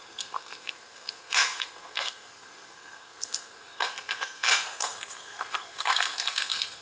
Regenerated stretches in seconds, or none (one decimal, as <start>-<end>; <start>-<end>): 0.0-6.8